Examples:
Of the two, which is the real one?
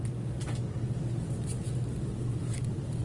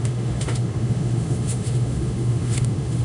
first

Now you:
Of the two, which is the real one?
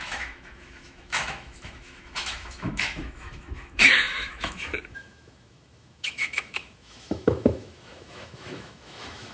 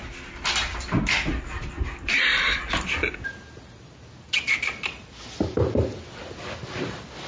second